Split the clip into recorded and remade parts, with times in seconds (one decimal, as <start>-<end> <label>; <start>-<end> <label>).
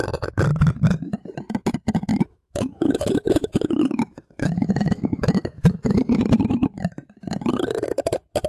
0.0-2.1 recorded; 2.1-6.2 remade; 6.2-8.5 recorded